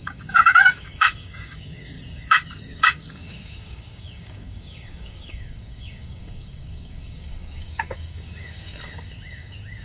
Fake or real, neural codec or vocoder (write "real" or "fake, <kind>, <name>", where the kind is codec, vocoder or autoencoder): fake, codec, DAC